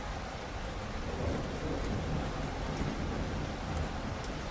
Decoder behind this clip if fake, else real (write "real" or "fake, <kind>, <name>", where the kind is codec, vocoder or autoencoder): real